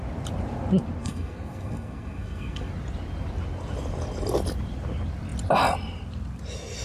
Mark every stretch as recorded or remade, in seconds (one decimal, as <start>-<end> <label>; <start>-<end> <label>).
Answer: 0.0-1.0 recorded; 1.0-2.7 remade; 2.7-6.8 recorded